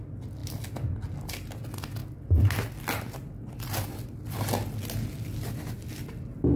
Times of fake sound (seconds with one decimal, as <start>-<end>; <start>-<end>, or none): none